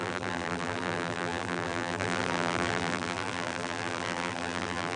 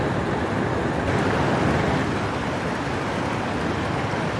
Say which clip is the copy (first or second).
first